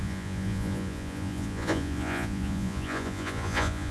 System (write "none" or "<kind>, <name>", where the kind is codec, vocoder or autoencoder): vocoder, Vocos